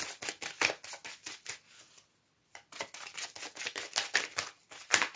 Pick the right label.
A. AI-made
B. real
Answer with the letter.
B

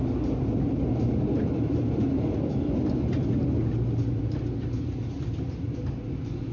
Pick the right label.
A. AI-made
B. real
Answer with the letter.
B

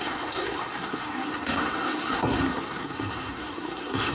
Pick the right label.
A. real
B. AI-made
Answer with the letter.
B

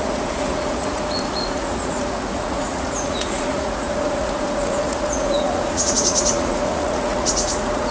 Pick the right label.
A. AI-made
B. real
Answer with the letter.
A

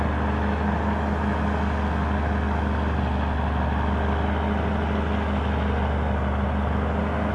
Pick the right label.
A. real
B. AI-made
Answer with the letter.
A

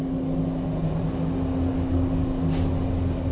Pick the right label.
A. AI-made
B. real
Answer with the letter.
B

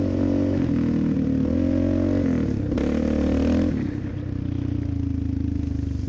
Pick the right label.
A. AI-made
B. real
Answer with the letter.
B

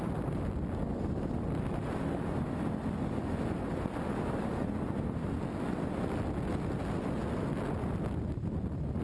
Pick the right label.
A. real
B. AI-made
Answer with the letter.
A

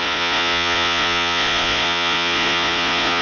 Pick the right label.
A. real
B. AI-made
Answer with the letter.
B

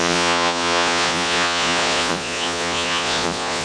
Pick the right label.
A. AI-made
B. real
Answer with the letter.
A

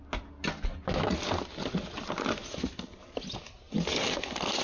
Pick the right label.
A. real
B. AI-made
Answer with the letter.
A